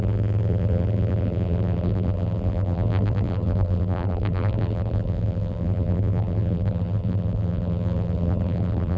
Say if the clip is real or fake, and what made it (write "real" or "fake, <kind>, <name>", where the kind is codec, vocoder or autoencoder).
fake, vocoder, BigVGAN v2